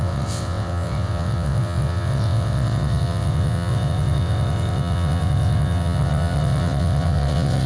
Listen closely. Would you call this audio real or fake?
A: fake